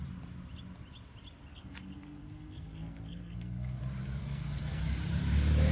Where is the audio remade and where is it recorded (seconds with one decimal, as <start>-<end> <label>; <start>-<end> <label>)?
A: 0.0-1.5 recorded; 1.5-3.8 remade; 3.8-4.2 recorded; 4.2-4.8 remade; 4.8-5.7 recorded